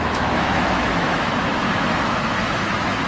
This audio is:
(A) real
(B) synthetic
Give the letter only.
B